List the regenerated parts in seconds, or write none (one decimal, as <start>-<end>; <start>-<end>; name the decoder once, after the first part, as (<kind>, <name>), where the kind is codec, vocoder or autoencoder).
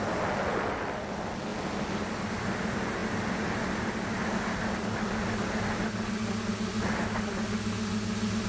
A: none